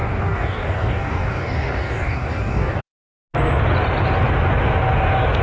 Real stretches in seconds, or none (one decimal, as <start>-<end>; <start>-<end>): 2.8-5.4

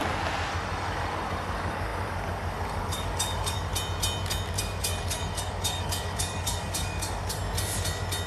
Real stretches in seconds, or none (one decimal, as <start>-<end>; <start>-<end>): 0.0-0.5; 3.7-4.6; 7.4-8.3

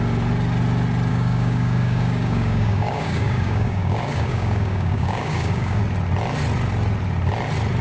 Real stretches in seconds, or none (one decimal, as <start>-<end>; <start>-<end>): 0.0-1.1; 5.8-7.8

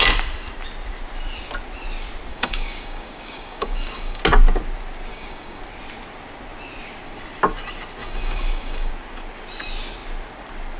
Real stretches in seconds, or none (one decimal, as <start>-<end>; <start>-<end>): 0.0-2.3; 4.2-5.1; 5.6-8.0; 8.9-10.8

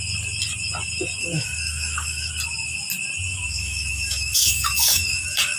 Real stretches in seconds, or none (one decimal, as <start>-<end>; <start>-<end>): 0.0-1.2; 2.3-3.5

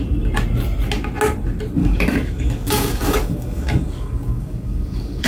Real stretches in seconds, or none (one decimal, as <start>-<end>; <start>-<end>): 0.0-1.8